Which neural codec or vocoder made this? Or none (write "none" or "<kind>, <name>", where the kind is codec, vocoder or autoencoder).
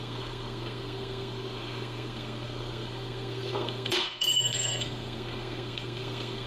codec, SNAC